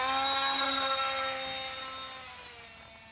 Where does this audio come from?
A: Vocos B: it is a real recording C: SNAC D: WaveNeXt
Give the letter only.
B